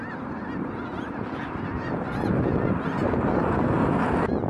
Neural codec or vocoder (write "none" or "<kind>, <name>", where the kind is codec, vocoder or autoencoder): none